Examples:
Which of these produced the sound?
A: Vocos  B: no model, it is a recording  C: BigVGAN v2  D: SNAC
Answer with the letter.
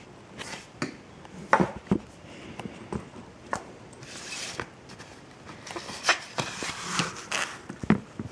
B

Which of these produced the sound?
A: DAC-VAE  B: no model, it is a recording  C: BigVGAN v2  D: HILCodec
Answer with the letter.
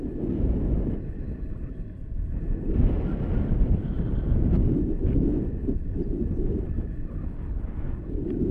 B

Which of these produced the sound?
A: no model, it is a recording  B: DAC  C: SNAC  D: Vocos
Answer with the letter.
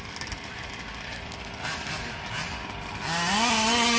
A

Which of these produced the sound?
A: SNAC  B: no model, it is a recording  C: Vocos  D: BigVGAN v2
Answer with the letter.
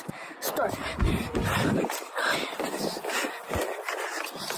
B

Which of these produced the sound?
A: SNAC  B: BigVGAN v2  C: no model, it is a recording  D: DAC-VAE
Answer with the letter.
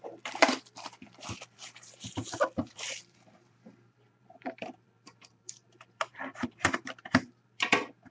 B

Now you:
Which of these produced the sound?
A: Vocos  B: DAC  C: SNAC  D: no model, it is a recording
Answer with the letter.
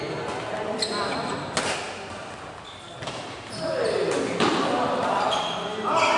D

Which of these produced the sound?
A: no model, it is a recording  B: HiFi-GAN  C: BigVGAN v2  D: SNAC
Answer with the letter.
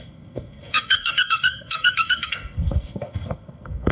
D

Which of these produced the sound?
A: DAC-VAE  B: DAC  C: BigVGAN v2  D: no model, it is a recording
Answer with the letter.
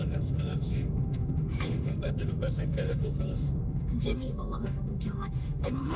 A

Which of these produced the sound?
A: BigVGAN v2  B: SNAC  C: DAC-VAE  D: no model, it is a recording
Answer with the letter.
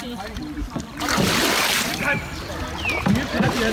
A